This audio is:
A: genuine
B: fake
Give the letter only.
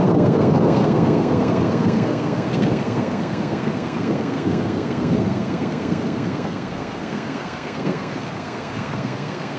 B